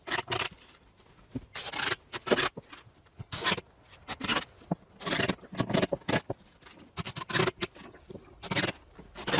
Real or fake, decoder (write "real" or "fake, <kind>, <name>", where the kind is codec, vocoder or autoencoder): real